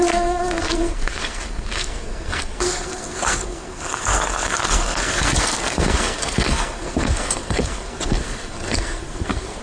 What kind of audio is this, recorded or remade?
remade